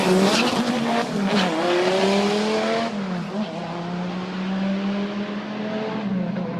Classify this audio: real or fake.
real